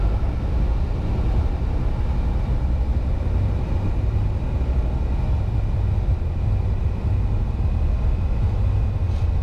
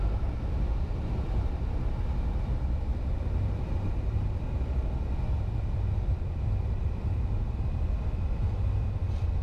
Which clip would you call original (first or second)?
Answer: first